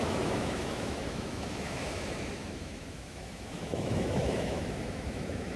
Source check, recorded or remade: remade